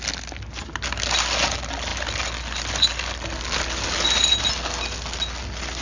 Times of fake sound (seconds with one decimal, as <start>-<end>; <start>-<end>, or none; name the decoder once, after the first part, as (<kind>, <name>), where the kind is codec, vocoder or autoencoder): none